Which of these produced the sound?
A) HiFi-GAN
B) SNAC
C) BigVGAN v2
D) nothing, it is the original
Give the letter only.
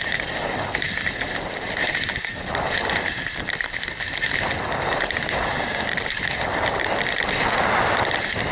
D